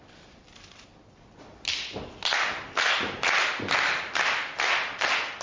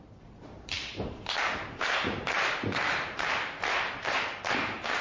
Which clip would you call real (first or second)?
first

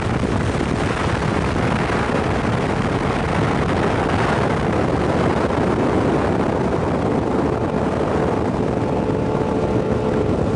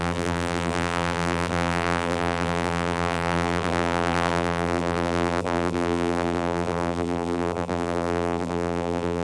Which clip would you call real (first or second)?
first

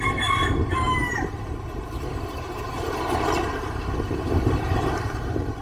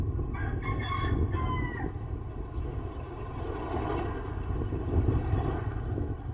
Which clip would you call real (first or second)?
second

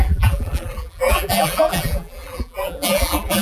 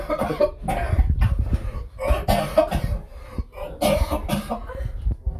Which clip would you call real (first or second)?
second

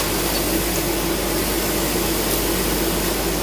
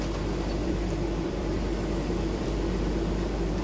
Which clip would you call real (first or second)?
first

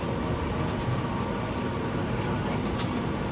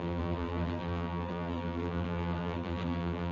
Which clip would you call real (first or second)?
first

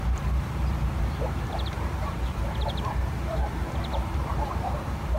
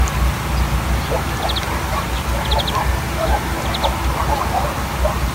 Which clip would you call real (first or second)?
second